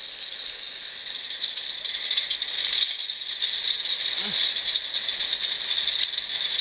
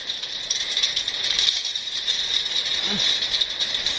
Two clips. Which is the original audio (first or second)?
first